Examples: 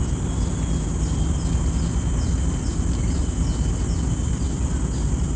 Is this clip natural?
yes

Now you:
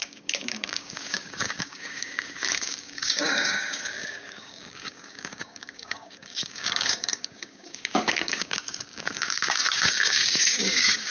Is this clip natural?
no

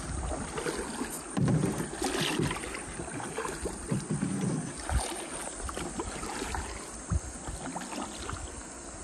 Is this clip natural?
yes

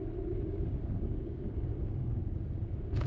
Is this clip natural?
no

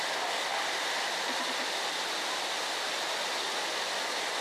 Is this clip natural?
yes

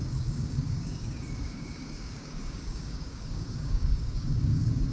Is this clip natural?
no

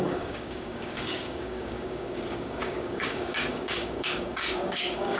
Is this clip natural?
no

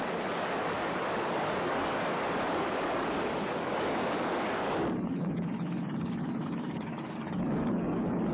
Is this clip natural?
no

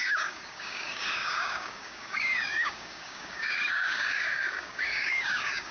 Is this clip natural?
no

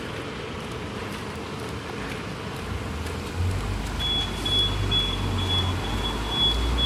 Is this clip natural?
yes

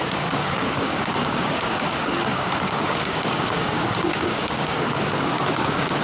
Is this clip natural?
no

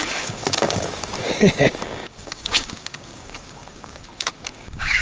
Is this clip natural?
no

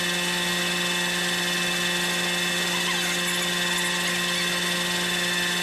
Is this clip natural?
yes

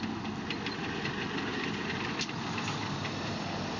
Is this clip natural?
yes